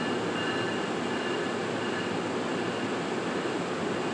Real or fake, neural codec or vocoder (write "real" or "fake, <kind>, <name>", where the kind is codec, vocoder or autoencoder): real